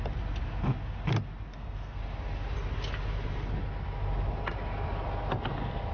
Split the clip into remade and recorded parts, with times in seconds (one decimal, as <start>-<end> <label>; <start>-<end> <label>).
0.0-1.5 recorded; 1.5-2.0 remade; 2.0-5.9 recorded